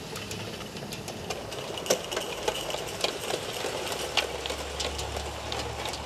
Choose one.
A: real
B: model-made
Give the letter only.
A